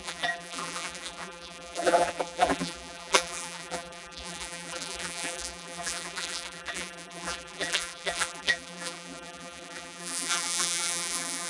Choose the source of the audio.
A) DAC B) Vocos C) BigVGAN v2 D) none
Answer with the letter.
C